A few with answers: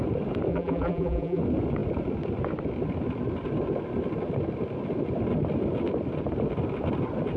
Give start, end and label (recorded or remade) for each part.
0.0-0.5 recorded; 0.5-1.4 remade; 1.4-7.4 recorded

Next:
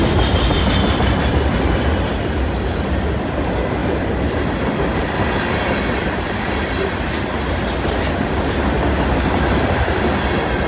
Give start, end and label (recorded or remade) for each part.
0.0-1.3 remade; 1.3-3.8 recorded; 3.8-4.5 remade; 4.5-6.0 recorded; 6.0-7.0 remade; 7.0-10.7 recorded